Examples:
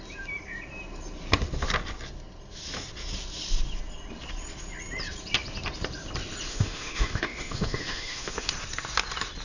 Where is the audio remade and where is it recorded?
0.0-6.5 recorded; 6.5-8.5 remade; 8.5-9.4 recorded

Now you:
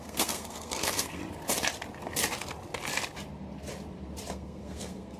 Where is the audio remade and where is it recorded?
0.0-1.2 remade; 1.2-4.3 recorded; 4.3-5.2 remade

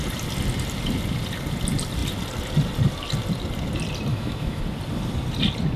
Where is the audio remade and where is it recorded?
0.0-4.1 recorded; 4.1-4.6 remade; 4.6-5.8 recorded

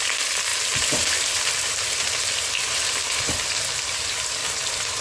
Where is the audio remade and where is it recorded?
0.0-0.5 recorded; 0.5-3.5 remade; 3.5-4.4 recorded; 4.4-5.0 remade

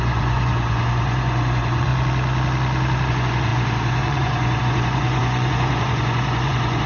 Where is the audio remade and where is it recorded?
0.0-1.9 remade; 1.9-3.1 recorded; 3.1-6.9 remade

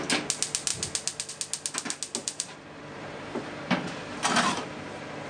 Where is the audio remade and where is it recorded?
0.0-2.2 recorded; 2.2-4.7 remade; 4.7-5.3 recorded

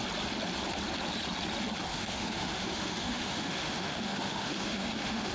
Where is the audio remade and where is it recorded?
0.0-1.9 recorded; 1.9-5.3 remade